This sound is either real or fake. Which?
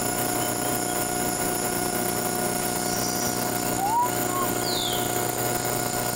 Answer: real